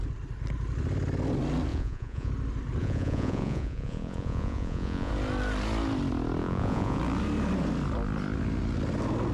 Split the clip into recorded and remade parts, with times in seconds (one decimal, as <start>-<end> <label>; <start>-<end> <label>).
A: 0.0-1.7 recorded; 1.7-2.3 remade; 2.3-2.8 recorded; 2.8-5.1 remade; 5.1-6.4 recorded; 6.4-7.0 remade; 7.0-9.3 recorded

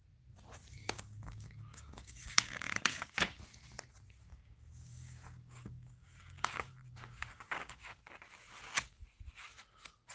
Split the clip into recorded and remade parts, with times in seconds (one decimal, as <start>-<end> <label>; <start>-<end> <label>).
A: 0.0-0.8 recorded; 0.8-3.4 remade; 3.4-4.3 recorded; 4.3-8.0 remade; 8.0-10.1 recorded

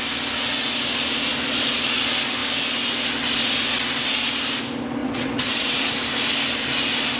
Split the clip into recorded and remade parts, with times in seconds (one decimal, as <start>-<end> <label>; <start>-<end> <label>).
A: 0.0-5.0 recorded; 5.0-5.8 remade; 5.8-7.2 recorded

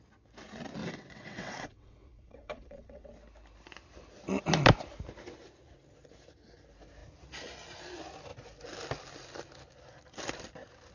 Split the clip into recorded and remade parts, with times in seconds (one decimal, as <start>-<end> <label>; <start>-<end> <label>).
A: 0.0-0.8 recorded; 0.8-3.1 remade; 3.1-10.9 recorded

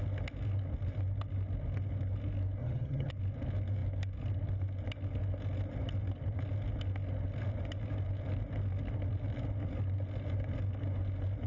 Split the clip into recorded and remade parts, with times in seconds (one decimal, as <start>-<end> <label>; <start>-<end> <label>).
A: 0.0-2.6 recorded; 2.6-3.1 remade; 3.1-11.5 recorded